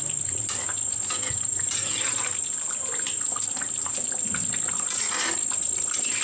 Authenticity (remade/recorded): recorded